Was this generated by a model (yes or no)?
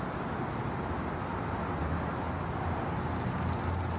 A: no